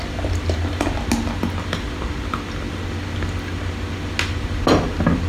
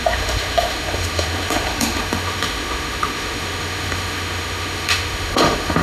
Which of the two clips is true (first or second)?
first